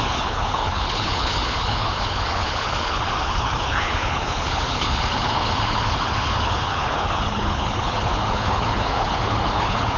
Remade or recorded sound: remade